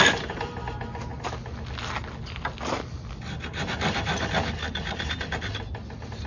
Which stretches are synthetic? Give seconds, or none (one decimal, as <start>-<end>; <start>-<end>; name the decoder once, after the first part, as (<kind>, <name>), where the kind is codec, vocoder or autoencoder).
none